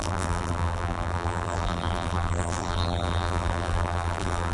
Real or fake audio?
fake